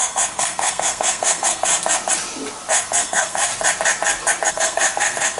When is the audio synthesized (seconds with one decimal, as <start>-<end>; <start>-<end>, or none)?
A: 0.0-1.7; 2.7-3.5; 4.5-5.4